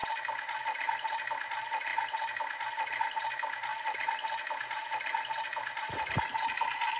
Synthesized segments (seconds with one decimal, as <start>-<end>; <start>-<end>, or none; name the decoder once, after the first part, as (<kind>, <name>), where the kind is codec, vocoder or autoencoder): 3.7-6.1 (vocoder, BigVGAN v2)